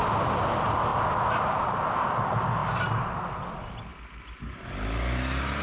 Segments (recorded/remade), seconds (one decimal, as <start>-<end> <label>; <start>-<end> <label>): 0.0-5.6 recorded